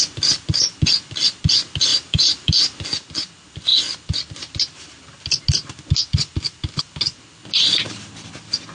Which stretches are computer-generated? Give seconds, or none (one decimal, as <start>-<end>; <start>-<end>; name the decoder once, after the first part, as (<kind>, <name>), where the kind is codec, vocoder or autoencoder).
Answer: 1.9-2.6 (vocoder, BigVGAN v2)